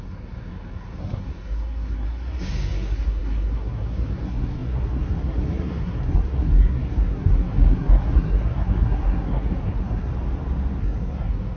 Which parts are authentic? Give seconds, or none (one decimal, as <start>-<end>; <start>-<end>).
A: 10.1-10.8